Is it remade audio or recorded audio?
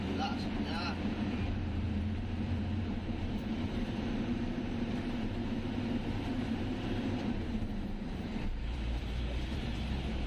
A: remade